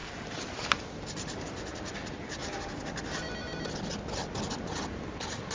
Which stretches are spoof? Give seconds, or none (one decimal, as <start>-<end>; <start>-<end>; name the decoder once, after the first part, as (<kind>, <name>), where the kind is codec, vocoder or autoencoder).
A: 0.0-0.7 (vocoder, BigVGAN v2); 2.4-3.2

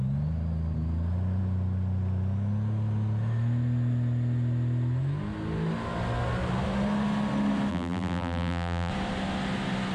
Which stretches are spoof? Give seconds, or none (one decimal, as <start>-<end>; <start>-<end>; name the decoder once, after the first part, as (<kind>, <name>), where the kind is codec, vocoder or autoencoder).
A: 7.7-8.9 (vocoder, BigVGAN v2)

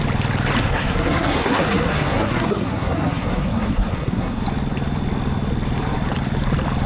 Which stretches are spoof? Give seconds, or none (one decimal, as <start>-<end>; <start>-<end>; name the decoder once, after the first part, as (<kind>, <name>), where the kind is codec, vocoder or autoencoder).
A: 0.6-4.4 (codec, SNAC)

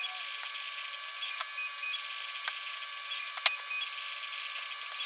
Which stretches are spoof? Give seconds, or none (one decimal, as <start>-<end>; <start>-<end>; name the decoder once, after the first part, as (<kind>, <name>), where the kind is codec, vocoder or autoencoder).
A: none